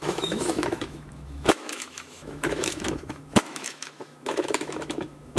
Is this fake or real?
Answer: fake